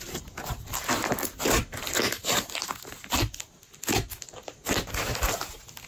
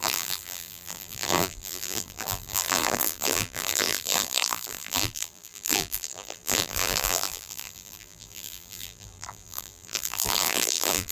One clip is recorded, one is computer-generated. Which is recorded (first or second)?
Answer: first